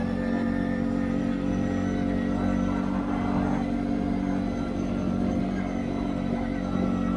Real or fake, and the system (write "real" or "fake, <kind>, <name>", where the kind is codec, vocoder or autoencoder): real